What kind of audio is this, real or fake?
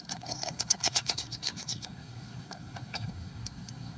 fake